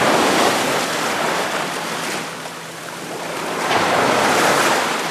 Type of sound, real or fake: real